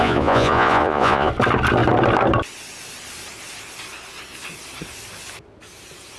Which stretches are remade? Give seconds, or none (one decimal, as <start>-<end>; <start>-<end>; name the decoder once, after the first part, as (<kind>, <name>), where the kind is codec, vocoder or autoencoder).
0.0-1.3 (vocoder, Vocos)